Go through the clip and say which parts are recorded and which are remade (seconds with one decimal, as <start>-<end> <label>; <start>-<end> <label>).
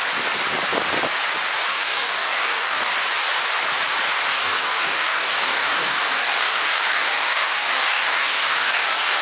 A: 0.0-1.7 recorded; 1.7-2.9 remade; 2.9-4.3 recorded; 4.3-9.2 remade